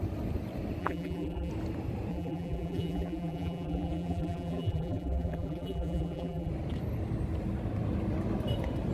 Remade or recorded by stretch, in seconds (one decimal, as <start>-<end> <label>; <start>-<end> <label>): 0.0-0.8 recorded; 0.8-1.5 remade; 1.5-2.1 recorded; 2.1-6.5 remade; 6.5-8.9 recorded